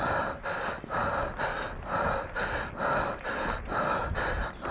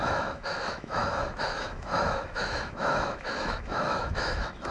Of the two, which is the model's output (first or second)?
second